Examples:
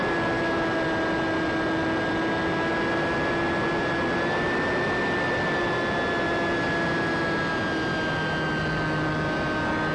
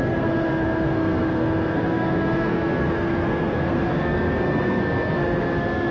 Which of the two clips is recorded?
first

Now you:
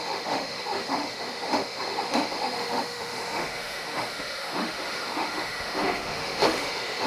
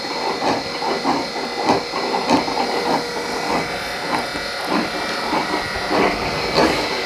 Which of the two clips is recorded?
second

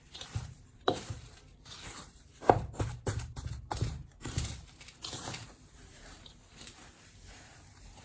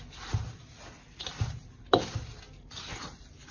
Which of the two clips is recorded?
second